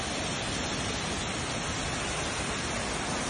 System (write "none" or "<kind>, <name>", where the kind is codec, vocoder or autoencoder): none